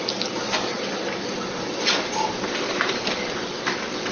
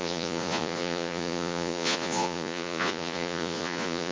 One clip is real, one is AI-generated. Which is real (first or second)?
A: first